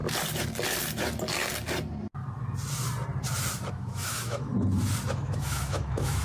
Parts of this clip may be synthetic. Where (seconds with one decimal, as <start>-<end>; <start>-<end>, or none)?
3.7-4.5; 5.1-6.2